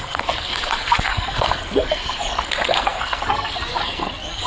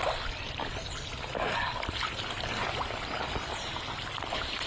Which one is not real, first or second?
first